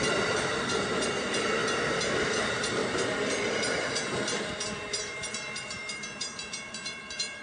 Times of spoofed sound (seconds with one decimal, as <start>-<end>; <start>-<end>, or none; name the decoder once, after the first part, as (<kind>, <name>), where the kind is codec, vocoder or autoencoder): 0.0-1.6 (vocoder, BigVGAN v2); 2.4-2.8; 5.0-7.4